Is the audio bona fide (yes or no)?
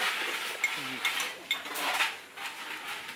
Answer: yes